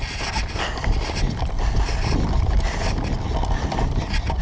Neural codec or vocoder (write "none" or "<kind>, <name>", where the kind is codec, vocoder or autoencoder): none